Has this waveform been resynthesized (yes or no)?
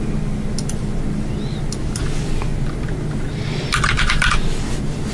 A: no